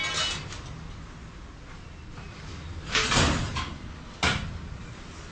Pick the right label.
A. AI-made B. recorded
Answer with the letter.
B